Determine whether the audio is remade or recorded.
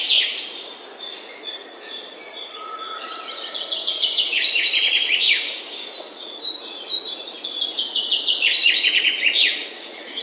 remade